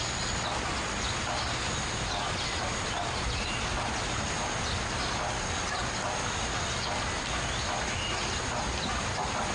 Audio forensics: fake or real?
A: real